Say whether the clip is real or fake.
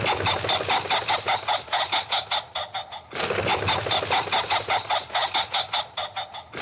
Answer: real